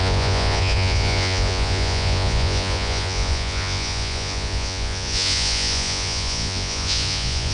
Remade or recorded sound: remade